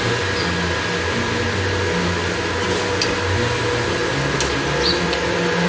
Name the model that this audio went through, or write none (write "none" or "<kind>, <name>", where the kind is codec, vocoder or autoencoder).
none